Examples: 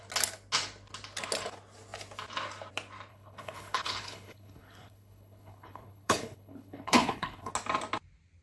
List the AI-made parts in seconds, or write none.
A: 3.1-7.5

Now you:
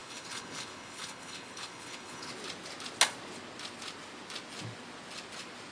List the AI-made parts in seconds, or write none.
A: 0.0-2.3

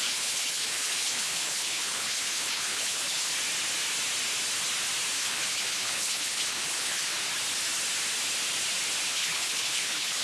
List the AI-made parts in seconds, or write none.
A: 0.0-3.3; 5.2-7.1; 9.1-10.2

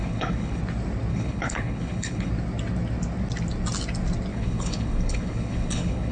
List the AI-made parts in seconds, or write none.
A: 0.0-0.6; 1.1-2.3; 4.3-6.1

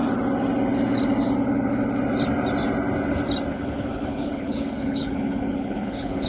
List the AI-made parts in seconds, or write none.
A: 3.5-6.3

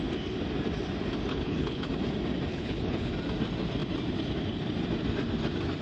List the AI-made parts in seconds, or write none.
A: 1.3-1.9; 2.5-3.1